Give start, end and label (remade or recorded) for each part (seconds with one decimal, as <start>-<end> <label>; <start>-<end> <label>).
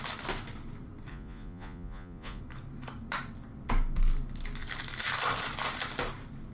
0.0-1.1 recorded; 1.1-2.4 remade; 2.4-6.5 recorded